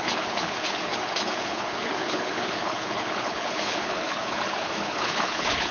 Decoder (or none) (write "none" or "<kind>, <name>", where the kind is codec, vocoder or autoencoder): codec, HILCodec